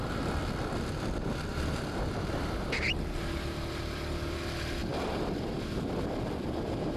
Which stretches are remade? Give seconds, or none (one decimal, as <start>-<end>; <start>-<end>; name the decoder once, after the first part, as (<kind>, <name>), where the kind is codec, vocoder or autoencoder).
1.5-2.9 (vocoder, BigVGAN v2); 4.9-5.8